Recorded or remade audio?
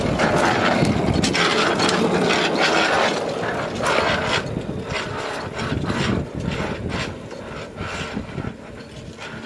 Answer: recorded